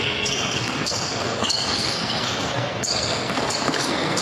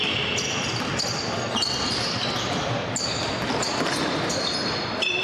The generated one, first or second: first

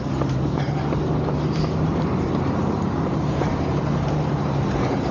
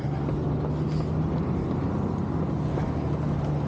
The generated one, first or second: first